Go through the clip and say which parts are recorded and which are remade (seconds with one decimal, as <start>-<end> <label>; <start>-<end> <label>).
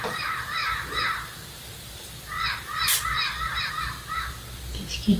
0.0-0.6 recorded; 0.6-3.7 remade; 3.7-5.2 recorded